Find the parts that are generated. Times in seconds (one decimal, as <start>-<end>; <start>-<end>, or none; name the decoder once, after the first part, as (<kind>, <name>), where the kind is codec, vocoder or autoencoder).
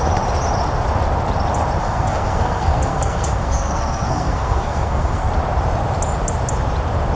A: 1.8-5.3 (codec, SNAC)